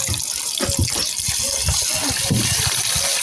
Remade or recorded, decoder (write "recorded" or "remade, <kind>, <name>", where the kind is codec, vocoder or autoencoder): recorded